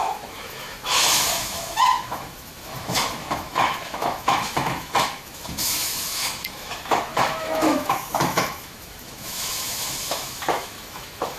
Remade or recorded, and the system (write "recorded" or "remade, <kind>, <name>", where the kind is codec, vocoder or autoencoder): remade, autoencoder, DAC-VAE